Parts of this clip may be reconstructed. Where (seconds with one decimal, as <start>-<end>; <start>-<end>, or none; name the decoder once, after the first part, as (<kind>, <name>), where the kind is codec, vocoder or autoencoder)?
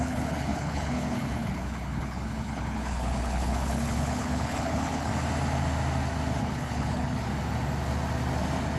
0.0-5.1 (codec, HILCodec); 6.4-7.3